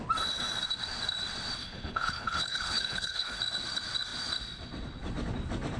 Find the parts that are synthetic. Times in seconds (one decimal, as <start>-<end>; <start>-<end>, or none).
1.6-3.4